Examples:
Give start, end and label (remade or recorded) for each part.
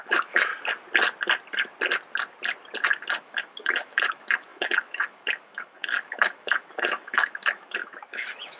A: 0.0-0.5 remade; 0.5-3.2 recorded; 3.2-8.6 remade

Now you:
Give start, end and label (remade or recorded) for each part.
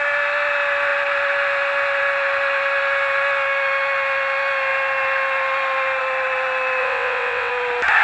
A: 0.0-6.8 recorded; 6.8-7.5 remade; 7.5-8.0 recorded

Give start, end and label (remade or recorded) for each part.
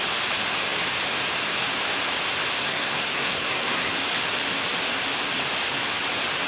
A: 0.0-2.6 recorded; 2.6-3.9 remade; 3.9-6.5 recorded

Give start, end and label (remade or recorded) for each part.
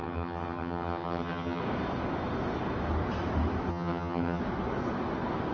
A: 0.0-1.6 remade; 1.6-3.7 recorded; 3.7-4.4 remade; 4.4-5.5 recorded